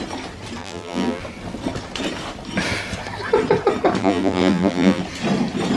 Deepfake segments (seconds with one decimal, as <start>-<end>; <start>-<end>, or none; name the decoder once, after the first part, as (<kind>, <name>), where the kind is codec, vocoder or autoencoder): 0.6-1.2 (vocoder, BigVGAN v2); 4.0-5.0

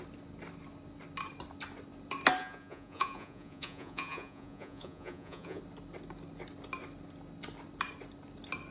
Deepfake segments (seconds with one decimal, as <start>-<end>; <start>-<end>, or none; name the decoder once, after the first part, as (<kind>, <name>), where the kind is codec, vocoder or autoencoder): 2.4-5.6 (vocoder, Vocos)

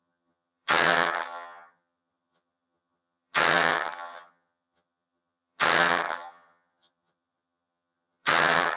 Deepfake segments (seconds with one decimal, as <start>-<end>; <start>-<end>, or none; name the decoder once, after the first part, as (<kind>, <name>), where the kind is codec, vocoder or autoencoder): 0.0-8.8 (vocoder, HiFi-GAN)